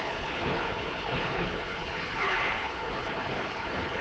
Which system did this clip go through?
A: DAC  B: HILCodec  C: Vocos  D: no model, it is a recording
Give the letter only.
B